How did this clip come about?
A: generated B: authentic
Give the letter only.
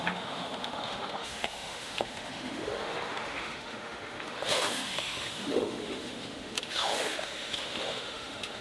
A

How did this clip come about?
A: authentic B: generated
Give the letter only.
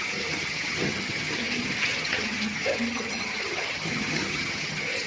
B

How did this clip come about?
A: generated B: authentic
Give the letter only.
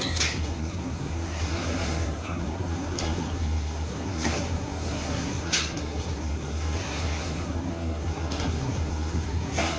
A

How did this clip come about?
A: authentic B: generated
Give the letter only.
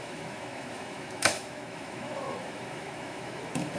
B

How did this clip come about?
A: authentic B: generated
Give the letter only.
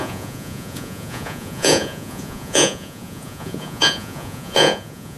B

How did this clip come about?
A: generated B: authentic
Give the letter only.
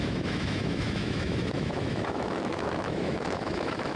A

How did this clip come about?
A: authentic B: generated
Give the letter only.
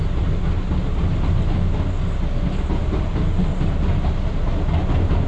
A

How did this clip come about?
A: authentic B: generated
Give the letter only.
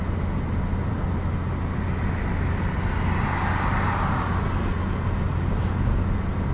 A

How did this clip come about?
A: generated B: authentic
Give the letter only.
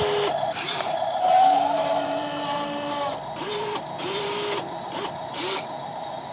A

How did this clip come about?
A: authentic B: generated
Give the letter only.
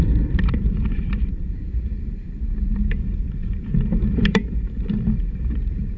B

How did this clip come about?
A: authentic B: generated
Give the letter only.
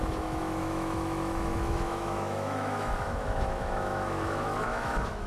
B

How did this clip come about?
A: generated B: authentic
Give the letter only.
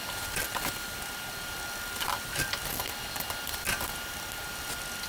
B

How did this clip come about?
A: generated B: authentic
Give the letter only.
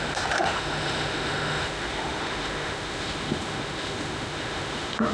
A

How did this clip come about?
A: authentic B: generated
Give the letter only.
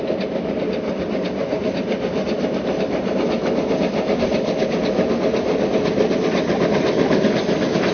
A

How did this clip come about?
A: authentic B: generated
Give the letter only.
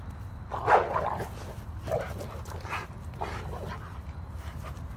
A